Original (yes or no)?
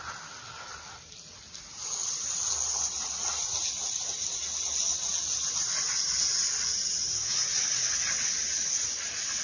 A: yes